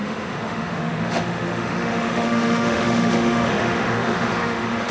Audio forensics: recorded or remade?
remade